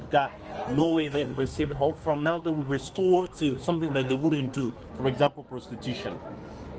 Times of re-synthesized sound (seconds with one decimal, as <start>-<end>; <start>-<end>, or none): 0.8-4.9